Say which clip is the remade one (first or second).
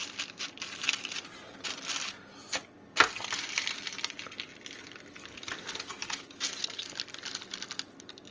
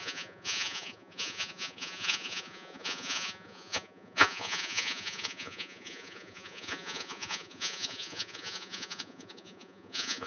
second